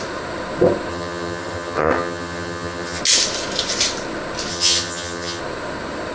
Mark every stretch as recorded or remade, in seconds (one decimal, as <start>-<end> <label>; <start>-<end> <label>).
0.0-0.9 recorded; 0.9-3.0 remade; 3.0-4.5 recorded; 4.5-5.4 remade; 5.4-6.1 recorded